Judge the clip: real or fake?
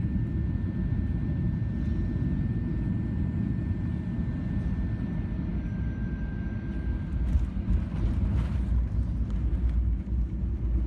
real